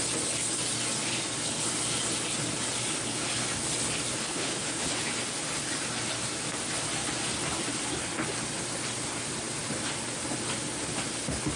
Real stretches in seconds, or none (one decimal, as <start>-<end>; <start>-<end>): 0.0-4.2; 5.0-11.6